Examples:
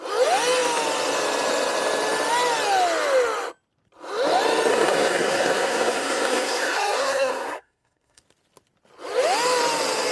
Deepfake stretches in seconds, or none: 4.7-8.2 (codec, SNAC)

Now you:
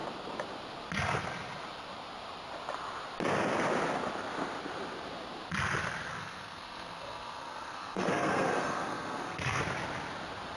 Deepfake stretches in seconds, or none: 6.1-9.6 (codec, SNAC)

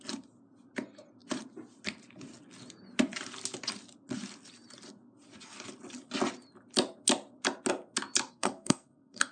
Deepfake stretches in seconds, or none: 8.3-9.3 (codec, SNAC)

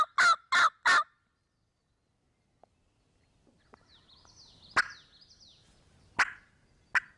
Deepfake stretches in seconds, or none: none

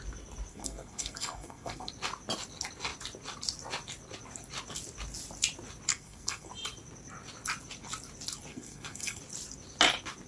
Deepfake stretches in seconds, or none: 0.5-1.9 (codec, SNAC); 5.9-6.5; 8.5-9.2

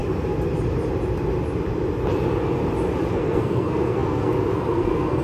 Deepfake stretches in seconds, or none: 3.1-5.2 (codec, SNAC)

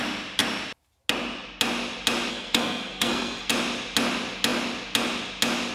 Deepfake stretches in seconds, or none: 2.3-3.5 (codec, SNAC)